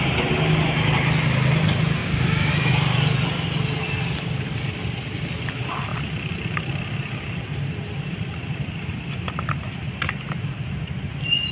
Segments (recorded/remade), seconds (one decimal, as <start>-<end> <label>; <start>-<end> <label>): 0.0-2.0 recorded; 2.0-2.5 remade; 2.5-11.5 recorded